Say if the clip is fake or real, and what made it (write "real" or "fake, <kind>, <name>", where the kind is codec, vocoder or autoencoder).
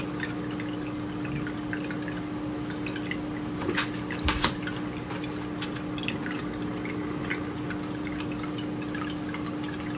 real